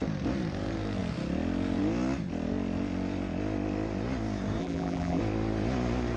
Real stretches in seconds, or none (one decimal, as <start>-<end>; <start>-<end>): 0.0-4.6; 5.2-6.2